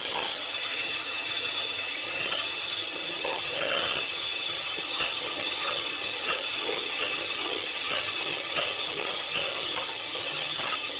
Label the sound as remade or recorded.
remade